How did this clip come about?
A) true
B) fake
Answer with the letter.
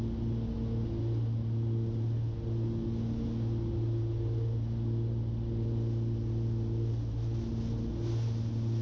A